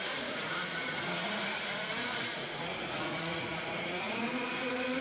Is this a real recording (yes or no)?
no